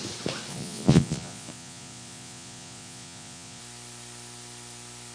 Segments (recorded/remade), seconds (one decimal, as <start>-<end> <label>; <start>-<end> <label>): 0.0-0.5 recorded; 0.5-3.6 remade; 3.6-5.1 recorded